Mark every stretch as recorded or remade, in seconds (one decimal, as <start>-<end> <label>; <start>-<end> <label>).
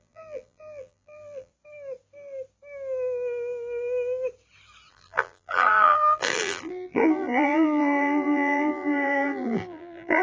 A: 0.0-1.5 remade; 1.5-4.9 recorded; 4.9-10.2 remade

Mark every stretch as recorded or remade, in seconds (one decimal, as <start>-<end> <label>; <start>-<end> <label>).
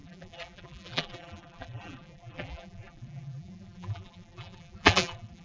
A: 0.0-5.4 remade